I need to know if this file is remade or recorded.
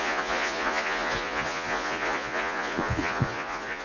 remade